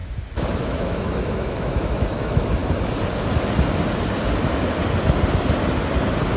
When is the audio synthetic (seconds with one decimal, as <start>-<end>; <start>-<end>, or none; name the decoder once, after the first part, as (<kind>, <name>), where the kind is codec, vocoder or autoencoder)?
0.6-2.6 (autoencoder, DAC-VAE)